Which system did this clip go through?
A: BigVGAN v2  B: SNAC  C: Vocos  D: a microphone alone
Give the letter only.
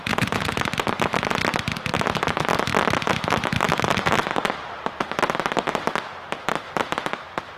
D